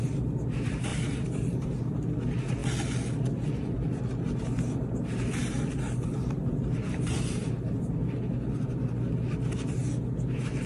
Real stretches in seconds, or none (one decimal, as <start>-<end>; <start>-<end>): 0.0-0.9; 1.8-6.1; 7.8-10.7